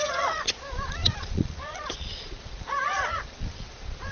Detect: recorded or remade remade